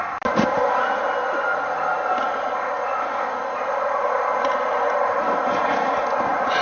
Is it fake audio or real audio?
real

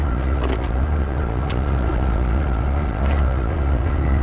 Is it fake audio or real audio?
fake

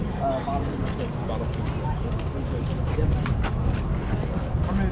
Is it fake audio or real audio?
real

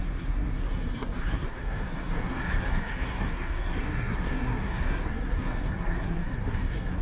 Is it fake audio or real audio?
fake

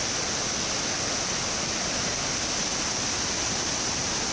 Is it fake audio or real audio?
real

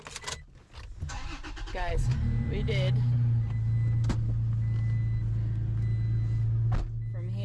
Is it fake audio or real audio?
real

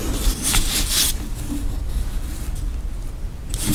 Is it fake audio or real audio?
real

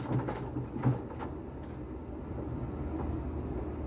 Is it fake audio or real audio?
real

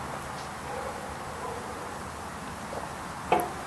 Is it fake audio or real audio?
real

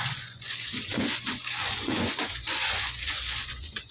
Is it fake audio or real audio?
fake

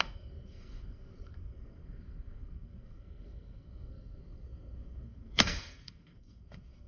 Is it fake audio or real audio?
fake